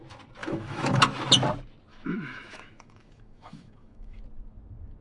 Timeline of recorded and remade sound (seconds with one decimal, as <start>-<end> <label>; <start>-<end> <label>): 0.0-0.4 recorded; 0.4-1.0 remade; 1.0-1.9 recorded; 1.9-4.2 remade; 4.2-5.0 recorded